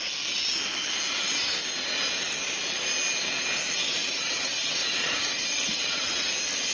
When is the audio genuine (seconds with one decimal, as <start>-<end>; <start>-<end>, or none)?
0.0-4.0; 6.3-6.7